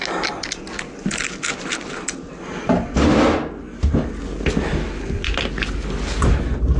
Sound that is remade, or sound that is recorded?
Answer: recorded